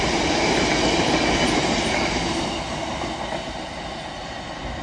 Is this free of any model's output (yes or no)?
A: yes